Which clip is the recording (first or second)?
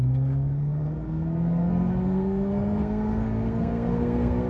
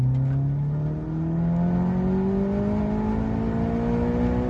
second